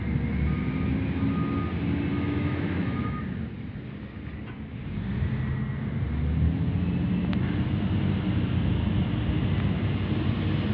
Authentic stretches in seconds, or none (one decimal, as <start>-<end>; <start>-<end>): 0.0-2.1; 3.2-10.7